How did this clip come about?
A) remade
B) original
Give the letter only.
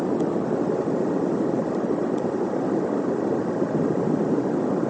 B